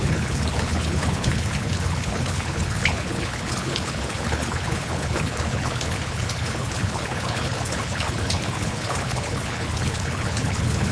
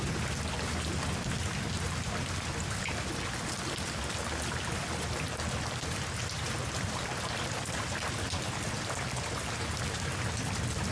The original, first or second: second